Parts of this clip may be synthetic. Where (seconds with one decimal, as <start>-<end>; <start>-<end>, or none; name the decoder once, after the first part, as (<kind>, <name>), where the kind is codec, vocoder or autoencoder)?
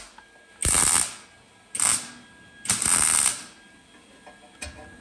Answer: none